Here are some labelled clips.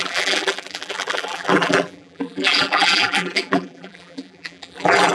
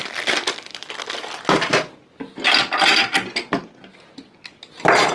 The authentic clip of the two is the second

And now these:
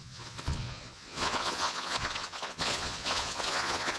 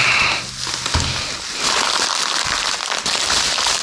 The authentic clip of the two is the second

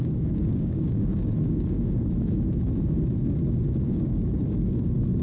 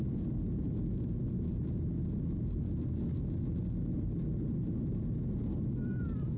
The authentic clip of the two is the second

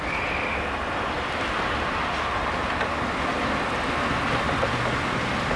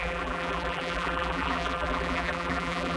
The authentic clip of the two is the first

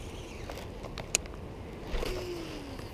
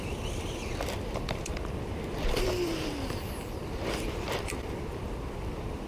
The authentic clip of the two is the first